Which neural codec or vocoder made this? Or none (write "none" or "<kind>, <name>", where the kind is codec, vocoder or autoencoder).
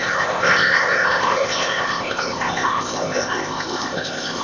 codec, ZipCodec